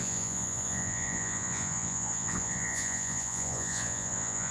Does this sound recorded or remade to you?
remade